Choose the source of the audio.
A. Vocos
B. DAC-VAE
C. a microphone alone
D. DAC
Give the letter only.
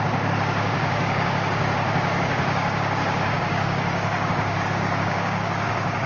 D